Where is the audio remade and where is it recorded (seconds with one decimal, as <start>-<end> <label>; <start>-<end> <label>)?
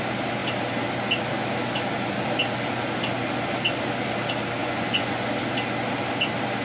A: 0.0-4.6 recorded; 4.6-5.3 remade; 5.3-6.6 recorded